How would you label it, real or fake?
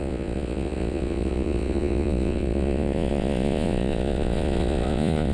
fake